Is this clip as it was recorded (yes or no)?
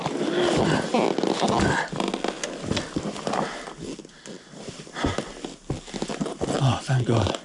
yes